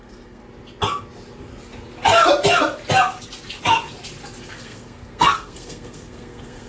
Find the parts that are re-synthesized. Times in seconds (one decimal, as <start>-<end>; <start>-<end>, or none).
0.0-0.4; 4.4-6.7